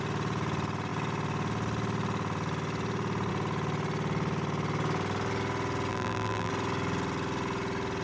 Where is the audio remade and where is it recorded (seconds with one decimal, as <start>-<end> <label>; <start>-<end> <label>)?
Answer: 0.0-5.9 recorded; 5.9-6.5 remade; 6.5-8.0 recorded